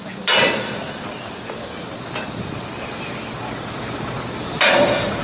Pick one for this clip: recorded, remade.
recorded